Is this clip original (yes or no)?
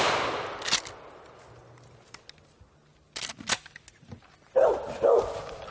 yes